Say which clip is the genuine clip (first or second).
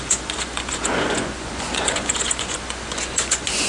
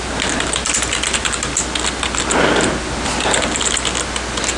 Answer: second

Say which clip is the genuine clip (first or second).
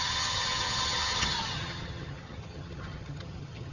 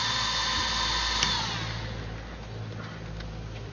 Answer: second